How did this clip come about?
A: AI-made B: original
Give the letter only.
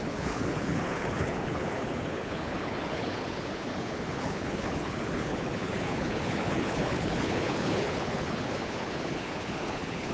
A